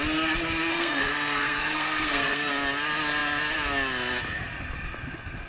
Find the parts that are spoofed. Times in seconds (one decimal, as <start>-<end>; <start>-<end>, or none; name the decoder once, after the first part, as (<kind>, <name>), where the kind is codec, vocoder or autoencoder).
0.7-2.5 (codec, SNAC)